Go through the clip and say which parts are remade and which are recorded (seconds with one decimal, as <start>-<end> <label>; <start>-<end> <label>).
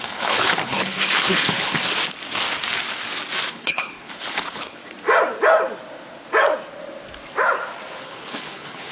0.0-1.8 remade; 1.8-3.5 recorded; 3.5-4.8 remade; 4.8-8.0 recorded; 8.0-8.9 remade